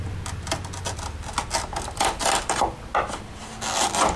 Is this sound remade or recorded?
recorded